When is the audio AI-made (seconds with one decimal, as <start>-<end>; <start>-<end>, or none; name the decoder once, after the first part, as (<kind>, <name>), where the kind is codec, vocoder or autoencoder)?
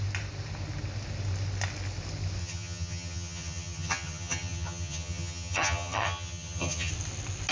2.4-6.9 (vocoder, HiFi-GAN)